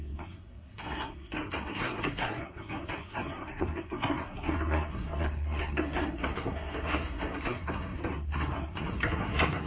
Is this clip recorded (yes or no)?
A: no